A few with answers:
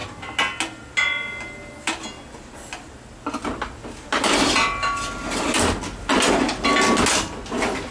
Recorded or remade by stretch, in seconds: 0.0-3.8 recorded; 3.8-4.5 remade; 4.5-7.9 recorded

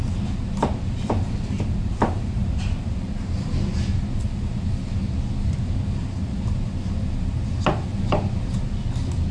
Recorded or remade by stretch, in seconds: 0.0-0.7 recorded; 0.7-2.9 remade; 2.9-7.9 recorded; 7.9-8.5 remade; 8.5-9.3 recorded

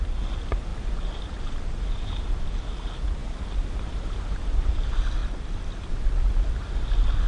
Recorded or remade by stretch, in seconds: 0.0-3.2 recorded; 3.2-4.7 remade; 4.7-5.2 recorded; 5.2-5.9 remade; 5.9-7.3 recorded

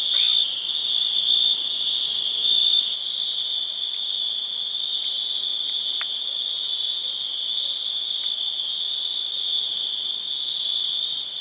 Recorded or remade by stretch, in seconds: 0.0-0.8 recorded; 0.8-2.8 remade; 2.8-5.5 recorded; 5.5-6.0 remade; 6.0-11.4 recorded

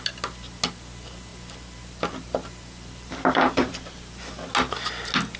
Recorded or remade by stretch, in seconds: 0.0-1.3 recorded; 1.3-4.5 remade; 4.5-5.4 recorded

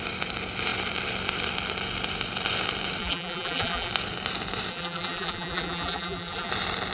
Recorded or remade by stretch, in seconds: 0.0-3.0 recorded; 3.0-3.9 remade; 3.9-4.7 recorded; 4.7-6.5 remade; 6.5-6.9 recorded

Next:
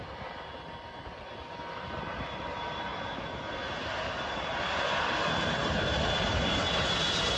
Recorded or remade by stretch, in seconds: 0.0-7.4 remade